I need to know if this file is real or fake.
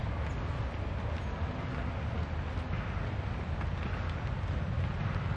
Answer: real